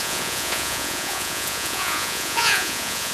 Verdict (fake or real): fake